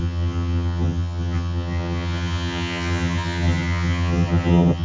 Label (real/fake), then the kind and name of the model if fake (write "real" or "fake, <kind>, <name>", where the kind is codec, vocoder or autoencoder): fake, vocoder, HiFi-GAN